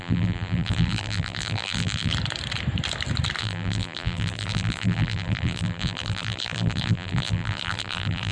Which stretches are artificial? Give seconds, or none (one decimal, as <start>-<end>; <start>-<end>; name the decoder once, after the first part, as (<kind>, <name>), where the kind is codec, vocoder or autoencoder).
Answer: 0.0-2.1 (vocoder, BigVGAN v2); 3.4-8.3